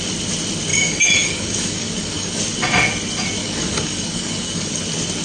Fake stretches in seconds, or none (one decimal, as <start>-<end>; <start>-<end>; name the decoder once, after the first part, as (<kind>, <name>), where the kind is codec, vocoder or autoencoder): 0.7-2.4 (codec, DAC); 3.4-4.8